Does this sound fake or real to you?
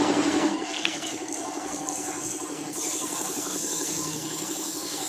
fake